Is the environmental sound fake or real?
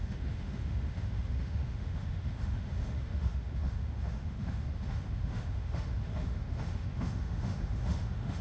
fake